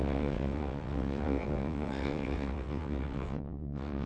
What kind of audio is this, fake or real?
fake